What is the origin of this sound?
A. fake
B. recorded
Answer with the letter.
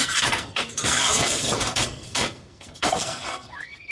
A